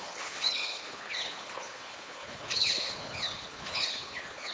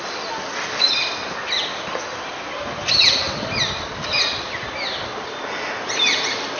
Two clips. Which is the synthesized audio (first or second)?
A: first